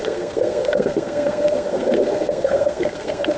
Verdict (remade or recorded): remade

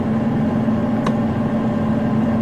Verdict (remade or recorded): recorded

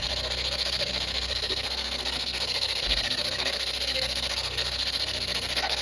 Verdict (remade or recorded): remade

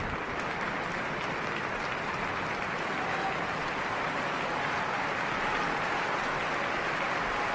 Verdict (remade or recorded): recorded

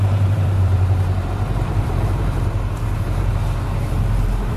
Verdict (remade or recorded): remade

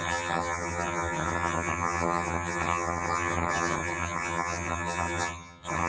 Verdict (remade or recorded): remade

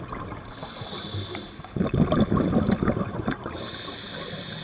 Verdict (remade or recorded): recorded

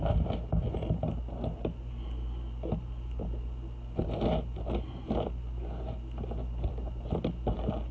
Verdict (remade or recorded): recorded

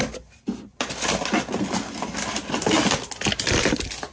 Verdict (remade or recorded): recorded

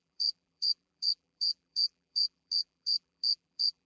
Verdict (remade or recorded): remade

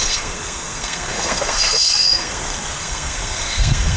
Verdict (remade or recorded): remade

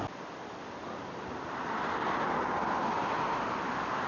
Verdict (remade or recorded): recorded